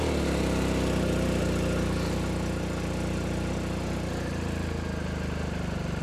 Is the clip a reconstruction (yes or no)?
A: no